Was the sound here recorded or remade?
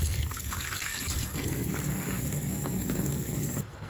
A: remade